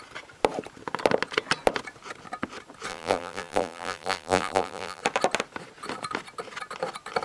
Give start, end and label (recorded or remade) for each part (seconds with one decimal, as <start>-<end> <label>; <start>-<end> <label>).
0.0-2.9 recorded; 2.9-5.0 remade; 5.0-7.2 recorded